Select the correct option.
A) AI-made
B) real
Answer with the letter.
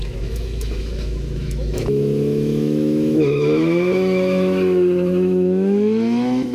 A